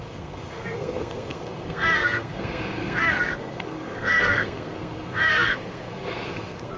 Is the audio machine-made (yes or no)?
yes